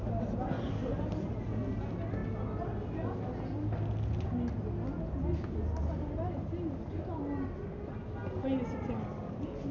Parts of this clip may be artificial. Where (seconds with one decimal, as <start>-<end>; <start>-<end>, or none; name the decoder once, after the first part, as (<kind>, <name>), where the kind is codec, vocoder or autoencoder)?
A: none